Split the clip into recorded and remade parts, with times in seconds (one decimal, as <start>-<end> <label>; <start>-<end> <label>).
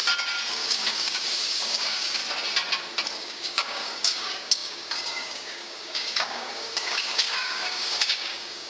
0.0-0.5 recorded; 0.5-2.2 remade; 2.2-3.2 recorded; 3.2-8.7 remade